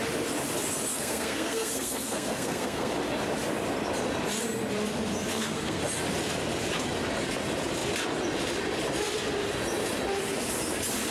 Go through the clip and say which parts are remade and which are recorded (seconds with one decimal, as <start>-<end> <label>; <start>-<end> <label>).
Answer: 0.0-0.9 recorded; 0.9-2.9 remade; 2.9-5.3 recorded; 5.3-5.8 remade; 5.8-11.1 recorded